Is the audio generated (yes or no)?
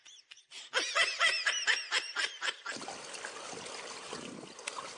yes